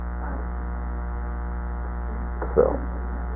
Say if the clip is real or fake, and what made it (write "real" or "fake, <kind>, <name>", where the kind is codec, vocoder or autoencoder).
real